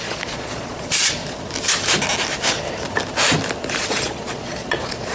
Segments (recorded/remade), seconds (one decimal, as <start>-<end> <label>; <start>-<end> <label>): 0.0-1.2 remade; 1.2-3.9 recorded; 3.9-5.1 remade